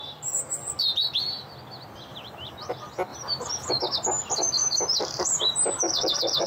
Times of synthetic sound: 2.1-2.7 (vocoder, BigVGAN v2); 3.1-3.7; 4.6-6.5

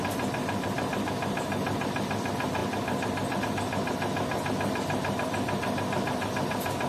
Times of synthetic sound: none

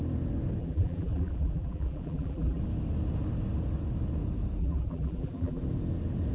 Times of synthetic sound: 0.6-2.6 (vocoder, BigVGAN v2); 4.6-5.6

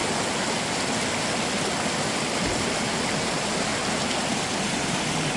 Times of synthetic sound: 3.2-3.7 (vocoder, BigVGAN v2); 4.6-5.4

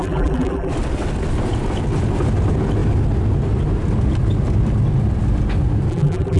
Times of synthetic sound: 0.0-0.7 (vocoder, BigVGAN v2); 5.9-6.4

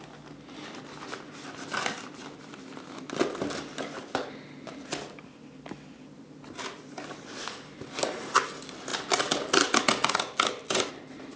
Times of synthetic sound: none

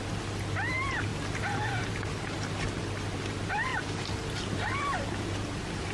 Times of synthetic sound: none